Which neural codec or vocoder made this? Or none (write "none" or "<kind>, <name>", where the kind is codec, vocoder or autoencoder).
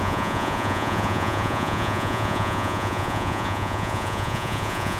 vocoder, Vocos